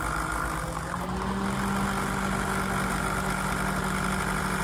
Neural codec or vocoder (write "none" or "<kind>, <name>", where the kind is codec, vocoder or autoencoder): none